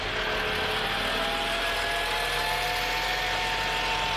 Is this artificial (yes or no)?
no